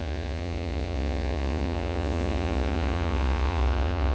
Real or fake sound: fake